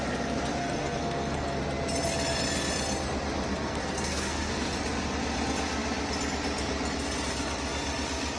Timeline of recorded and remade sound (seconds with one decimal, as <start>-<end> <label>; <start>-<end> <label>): 0.0-0.6 recorded; 0.6-1.6 remade; 1.6-3.5 recorded; 3.5-4.5 remade; 4.5-8.4 recorded